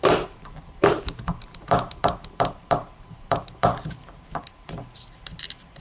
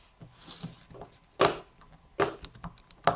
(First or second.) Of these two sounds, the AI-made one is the first